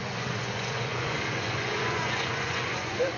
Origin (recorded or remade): remade